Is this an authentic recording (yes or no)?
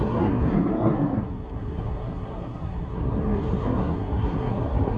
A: no